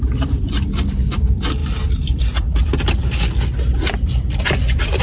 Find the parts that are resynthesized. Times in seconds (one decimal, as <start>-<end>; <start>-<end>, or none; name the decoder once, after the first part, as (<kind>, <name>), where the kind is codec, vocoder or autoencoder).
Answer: none